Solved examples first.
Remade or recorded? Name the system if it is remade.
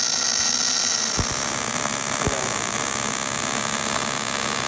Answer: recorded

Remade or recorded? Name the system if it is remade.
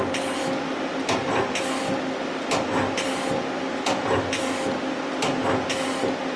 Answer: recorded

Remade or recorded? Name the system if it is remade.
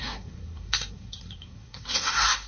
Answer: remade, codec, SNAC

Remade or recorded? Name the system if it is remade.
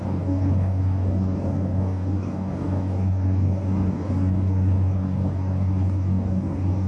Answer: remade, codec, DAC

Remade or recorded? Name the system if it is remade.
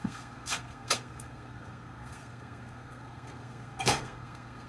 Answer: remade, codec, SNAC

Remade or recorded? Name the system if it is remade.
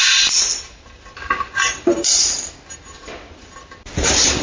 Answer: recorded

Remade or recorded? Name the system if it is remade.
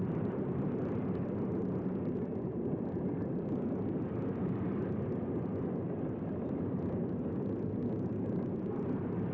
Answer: remade, vocoder, BigVGAN v2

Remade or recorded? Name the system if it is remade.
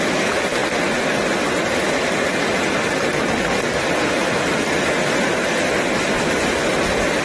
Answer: recorded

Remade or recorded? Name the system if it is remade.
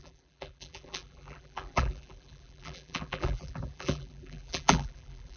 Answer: remade, vocoder, BigVGAN v2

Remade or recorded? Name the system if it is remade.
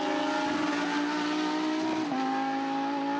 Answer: recorded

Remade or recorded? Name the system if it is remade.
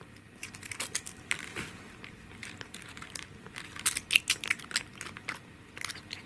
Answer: recorded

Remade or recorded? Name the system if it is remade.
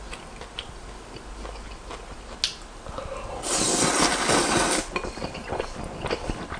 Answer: recorded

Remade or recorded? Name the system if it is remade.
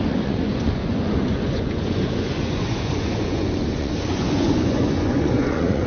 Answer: remade, vocoder, Vocos